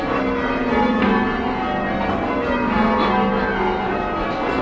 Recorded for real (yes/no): yes